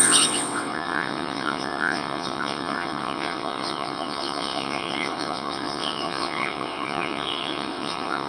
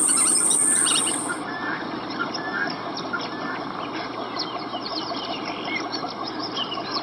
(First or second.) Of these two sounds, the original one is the second